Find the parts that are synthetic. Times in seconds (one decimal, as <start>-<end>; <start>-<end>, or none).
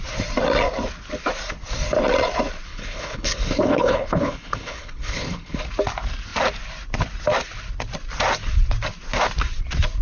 2.7-5.6